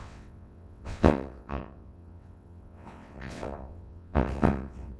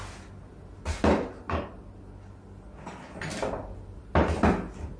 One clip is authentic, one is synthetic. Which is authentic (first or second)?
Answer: second